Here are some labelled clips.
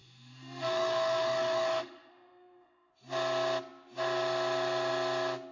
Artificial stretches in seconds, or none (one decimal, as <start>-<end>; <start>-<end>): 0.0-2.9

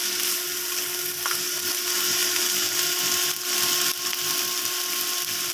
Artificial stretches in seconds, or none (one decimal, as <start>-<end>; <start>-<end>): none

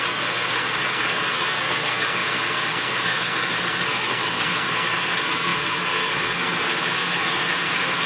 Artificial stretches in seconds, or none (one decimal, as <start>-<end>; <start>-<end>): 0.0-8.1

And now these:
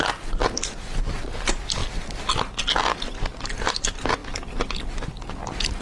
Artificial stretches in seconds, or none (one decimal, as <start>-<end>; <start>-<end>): none

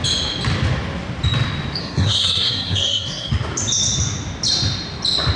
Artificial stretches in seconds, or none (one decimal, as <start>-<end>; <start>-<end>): 1.8-3.3